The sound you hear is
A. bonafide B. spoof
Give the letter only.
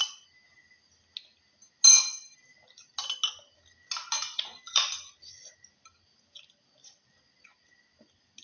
A